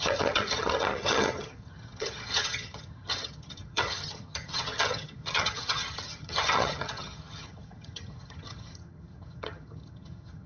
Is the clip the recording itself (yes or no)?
no